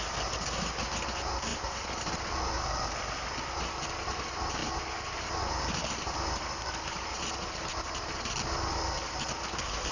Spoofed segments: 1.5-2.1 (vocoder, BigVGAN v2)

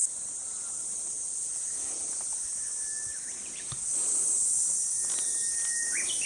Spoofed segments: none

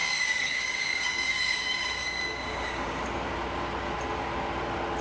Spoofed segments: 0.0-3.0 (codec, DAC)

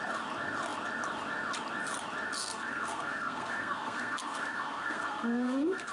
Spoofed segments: 2.4-5.9 (codec, SNAC)

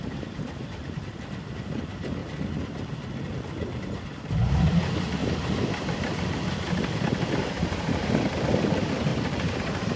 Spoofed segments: 0.0-2.2 (vocoder, BigVGAN v2); 3.8-5.2; 7.3-10.0

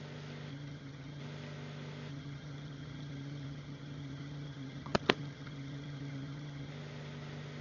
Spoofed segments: 0.5-1.2 (vocoder, HiFi-GAN); 2.1-6.7